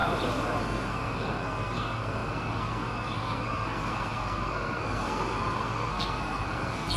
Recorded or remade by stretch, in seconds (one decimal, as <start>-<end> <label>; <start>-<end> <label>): 0.0-0.6 recorded; 0.6-7.0 remade